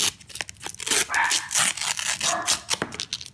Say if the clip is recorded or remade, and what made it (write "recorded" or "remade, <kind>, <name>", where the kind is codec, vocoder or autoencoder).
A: recorded